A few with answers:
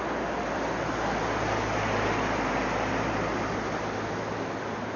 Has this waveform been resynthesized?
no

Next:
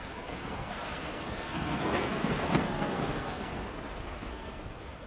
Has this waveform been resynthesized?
yes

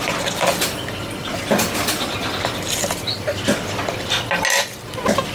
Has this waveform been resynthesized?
no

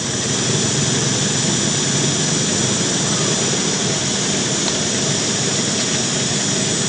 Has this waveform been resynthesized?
no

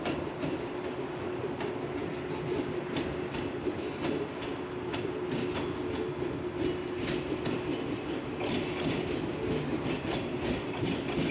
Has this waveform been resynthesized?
no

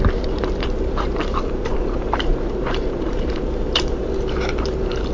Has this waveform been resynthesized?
yes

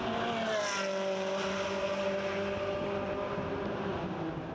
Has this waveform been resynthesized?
no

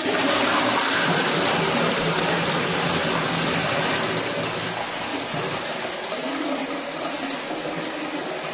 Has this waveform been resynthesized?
no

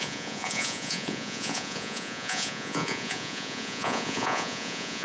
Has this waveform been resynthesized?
yes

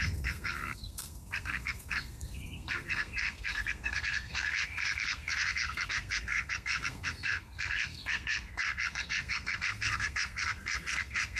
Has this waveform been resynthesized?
yes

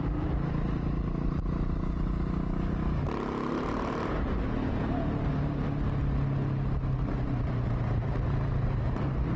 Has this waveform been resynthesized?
no